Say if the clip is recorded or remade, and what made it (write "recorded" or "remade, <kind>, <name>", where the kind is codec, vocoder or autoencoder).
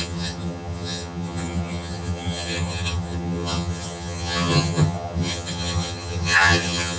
remade, vocoder, HiFi-GAN